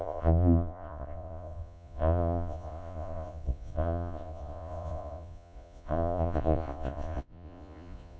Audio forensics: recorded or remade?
remade